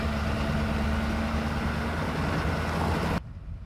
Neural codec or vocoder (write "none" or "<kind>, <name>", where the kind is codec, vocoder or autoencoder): none